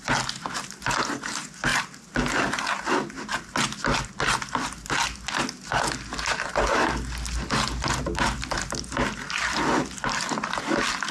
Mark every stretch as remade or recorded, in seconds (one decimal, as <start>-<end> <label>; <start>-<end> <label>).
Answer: 0.0-11.1 recorded